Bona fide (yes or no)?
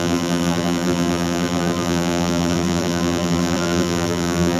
no